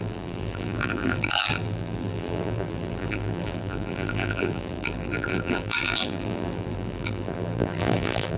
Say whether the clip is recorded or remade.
remade